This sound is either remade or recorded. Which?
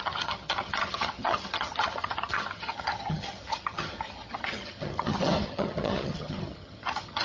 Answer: remade